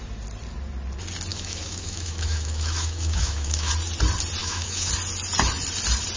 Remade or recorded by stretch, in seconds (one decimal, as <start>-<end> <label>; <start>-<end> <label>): 0.0-1.3 recorded; 1.3-3.7 remade; 3.7-4.4 recorded; 4.4-4.9 remade; 4.9-6.2 recorded